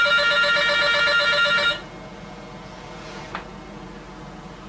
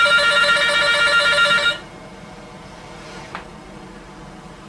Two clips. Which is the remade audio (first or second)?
second